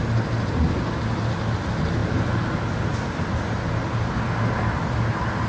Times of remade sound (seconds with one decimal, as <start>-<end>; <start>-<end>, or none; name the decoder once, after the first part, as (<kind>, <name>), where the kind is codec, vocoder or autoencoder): none

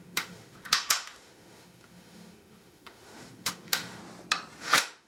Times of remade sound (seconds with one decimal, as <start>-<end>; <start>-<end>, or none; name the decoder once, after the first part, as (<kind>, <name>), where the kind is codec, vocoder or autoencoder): 0.0-4.0 (autoencoder, DAC-VAE); 4.6-5.1